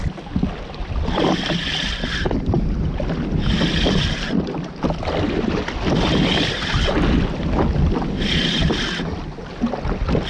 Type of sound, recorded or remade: recorded